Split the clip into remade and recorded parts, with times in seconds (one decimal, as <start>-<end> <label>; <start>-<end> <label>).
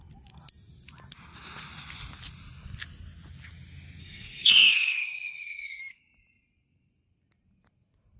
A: 0.0-4.0 recorded; 4.0-5.8 remade; 5.8-8.2 recorded